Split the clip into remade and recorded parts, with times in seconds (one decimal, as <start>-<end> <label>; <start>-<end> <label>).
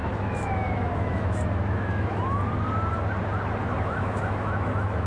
0.0-2.4 remade; 2.4-3.6 recorded; 3.6-5.1 remade